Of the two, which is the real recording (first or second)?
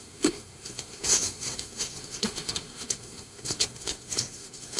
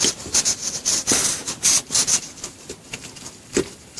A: second